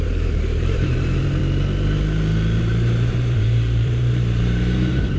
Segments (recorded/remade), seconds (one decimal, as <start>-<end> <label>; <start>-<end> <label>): 0.0-1.4 remade; 1.4-2.6 recorded; 2.6-5.2 remade